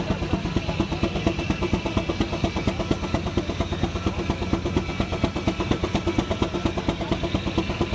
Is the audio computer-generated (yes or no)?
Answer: no